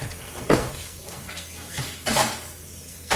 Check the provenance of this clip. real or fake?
fake